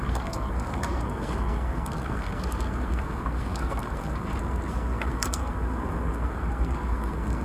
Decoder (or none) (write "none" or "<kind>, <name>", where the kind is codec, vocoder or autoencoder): codec, SNAC